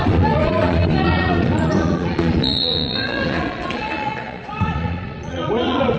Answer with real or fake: fake